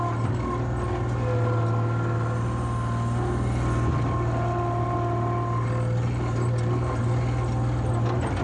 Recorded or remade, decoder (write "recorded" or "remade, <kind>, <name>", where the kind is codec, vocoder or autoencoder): recorded